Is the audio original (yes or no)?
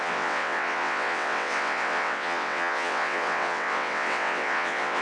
no